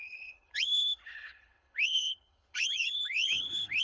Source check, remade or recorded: remade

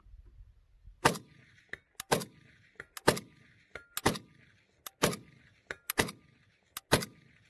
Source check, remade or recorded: recorded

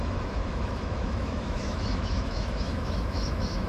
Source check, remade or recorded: remade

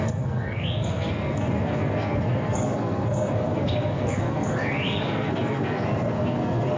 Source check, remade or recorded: remade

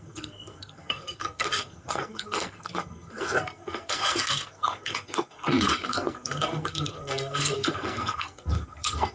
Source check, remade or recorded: remade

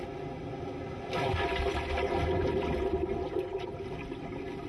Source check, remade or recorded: recorded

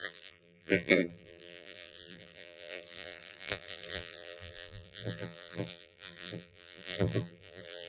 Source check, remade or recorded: remade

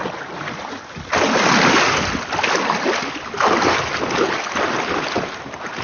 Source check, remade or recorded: recorded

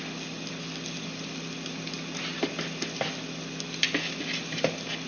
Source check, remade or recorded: recorded